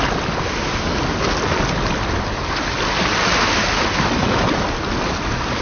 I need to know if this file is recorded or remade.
recorded